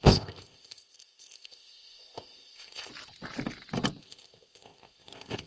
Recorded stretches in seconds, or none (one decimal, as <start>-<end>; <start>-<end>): 2.9-4.0